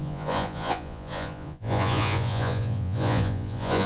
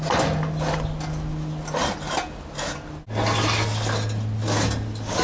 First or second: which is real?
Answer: second